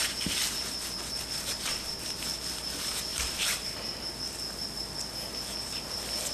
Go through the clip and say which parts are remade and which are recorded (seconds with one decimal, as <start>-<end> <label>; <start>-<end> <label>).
0.0-3.1 recorded; 3.1-4.1 remade; 4.1-6.3 recorded